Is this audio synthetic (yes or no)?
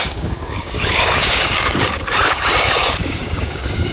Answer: yes